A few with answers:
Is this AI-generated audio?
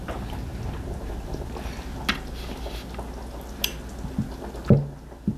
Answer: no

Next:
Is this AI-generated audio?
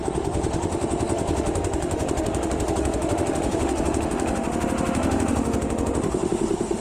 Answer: yes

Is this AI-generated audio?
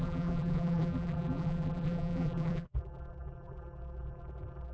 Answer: yes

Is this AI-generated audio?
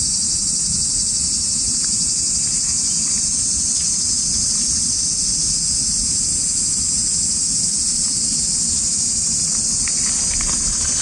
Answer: no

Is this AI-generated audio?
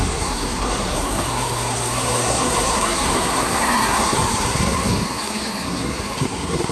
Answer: yes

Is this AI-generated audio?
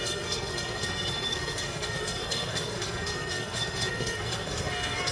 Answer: yes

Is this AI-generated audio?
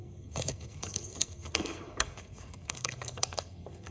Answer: yes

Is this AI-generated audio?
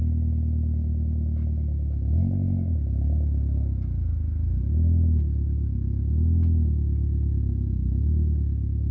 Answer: no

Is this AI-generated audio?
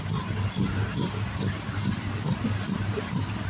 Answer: no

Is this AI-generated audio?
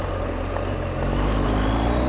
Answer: no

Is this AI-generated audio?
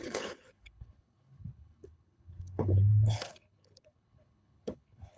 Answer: yes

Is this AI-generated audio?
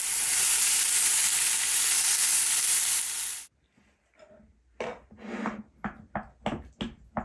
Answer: no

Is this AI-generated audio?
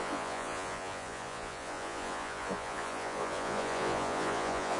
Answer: yes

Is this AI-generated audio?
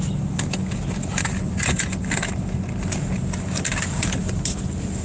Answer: no